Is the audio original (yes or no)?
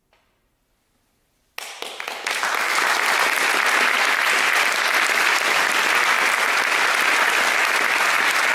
yes